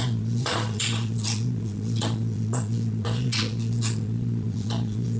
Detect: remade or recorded remade